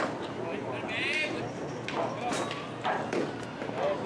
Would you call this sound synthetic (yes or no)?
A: no